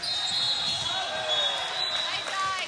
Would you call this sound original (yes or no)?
yes